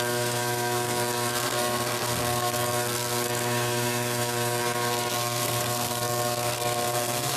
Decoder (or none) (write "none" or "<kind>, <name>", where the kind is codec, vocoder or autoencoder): codec, SNAC